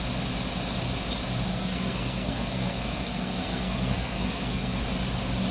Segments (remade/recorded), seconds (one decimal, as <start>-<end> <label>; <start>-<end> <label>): 0.0-1.5 recorded; 1.5-4.8 remade; 4.8-5.5 recorded